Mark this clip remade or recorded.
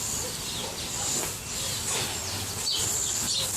recorded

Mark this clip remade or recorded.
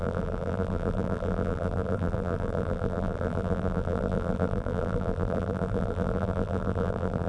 remade